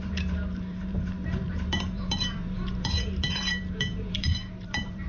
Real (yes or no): no